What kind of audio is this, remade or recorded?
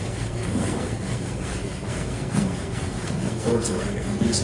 remade